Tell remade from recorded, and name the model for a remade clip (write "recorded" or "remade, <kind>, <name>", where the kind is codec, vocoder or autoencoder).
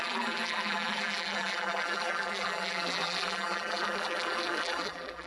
remade, vocoder, BigVGAN v2